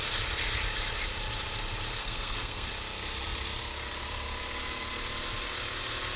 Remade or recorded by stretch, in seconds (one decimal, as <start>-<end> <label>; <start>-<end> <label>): 0.0-2.0 recorded; 2.0-2.7 remade; 2.7-6.2 recorded